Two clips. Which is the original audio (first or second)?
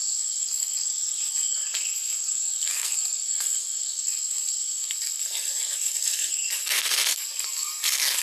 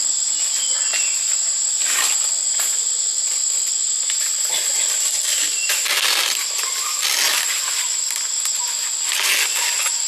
second